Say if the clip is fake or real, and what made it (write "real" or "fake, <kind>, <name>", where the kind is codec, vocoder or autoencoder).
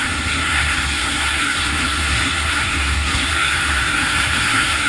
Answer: fake, codec, SNAC